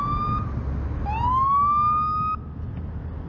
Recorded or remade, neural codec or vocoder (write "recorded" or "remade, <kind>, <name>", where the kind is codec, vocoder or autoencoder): recorded